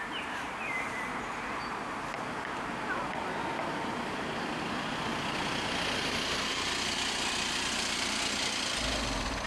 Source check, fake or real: real